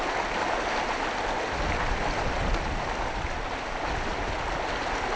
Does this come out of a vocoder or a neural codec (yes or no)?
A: no